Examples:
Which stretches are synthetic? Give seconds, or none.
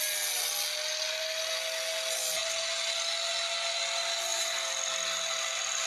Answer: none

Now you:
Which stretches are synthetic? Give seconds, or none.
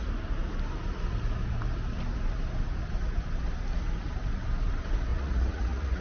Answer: 5.1-6.0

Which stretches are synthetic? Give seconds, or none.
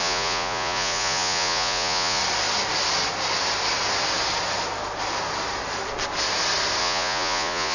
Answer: 0.0-2.2; 6.8-7.7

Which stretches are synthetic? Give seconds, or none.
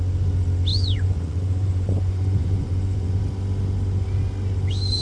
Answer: 0.7-3.2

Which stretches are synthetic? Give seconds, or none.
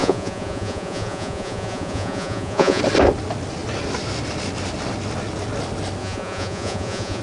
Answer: 0.0-2.8; 6.0-7.2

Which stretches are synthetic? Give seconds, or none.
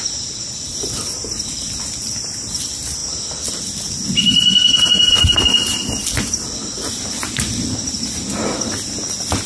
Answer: none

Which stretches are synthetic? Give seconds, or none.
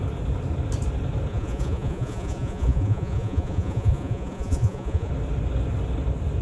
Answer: 1.3-5.1